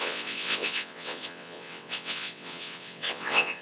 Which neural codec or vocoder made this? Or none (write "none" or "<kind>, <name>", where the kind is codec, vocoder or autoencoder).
vocoder, WaveNeXt